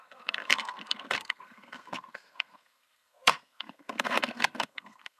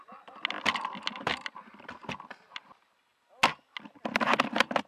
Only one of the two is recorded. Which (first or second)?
second